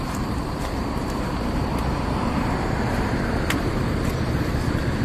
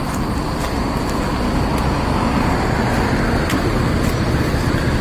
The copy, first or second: first